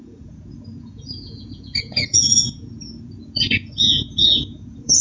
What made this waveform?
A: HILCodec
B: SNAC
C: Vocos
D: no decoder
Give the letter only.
C